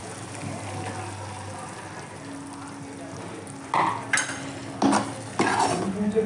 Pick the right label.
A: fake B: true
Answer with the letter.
B